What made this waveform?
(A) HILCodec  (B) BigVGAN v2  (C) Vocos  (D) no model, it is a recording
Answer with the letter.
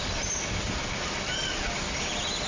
D